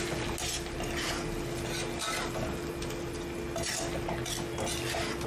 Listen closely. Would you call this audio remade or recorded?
recorded